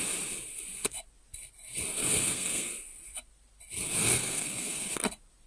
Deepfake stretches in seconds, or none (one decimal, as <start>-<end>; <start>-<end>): 2.0-2.7; 4.0-4.9

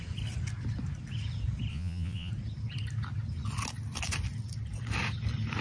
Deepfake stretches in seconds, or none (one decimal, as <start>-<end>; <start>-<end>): 1.7-2.3

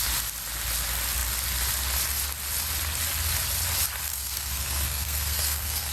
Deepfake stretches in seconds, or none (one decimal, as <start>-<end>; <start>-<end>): 4.1-5.9

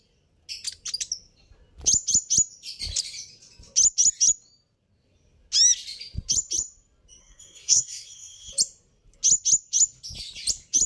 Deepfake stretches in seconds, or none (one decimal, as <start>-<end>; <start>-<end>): 7.2-8.5

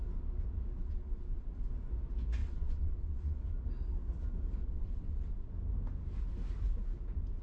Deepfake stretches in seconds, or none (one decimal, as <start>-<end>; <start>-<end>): 0.8-1.7; 2.4-3.4; 4.6-5.5

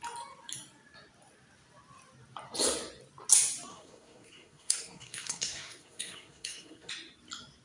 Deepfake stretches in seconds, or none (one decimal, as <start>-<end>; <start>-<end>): 3.7-6.9